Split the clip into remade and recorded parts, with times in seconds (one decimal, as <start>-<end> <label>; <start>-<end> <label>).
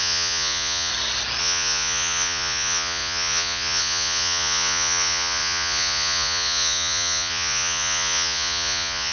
0.0-0.9 remade; 0.9-1.4 recorded; 1.4-9.1 remade